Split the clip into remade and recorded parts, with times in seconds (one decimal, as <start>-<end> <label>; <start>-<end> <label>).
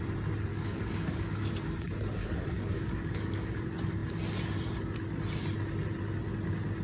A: 0.0-0.5 recorded; 0.5-1.5 remade; 1.5-2.2 recorded; 2.2-3.6 remade; 3.6-6.8 recorded